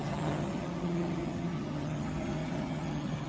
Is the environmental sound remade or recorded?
remade